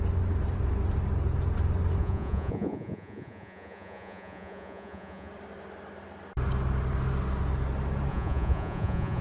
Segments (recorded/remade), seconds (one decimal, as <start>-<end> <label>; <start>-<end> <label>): 0.0-2.0 recorded; 2.0-5.3 remade; 5.3-8.1 recorded; 8.1-9.2 remade